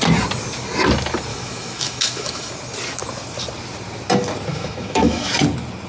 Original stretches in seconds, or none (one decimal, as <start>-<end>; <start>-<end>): 0.0-1.3; 2.5-4.5; 5.3-5.9